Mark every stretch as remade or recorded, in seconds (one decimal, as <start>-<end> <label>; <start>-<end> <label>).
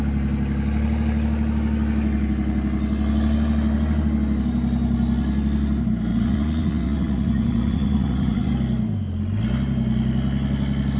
0.0-6.1 recorded; 6.1-8.5 remade; 8.5-11.0 recorded